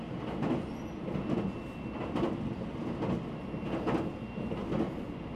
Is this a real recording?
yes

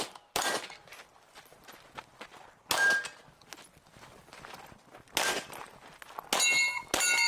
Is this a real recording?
yes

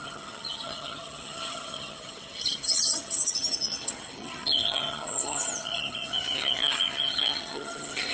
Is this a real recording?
no